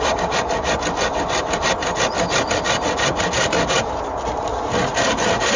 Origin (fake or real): real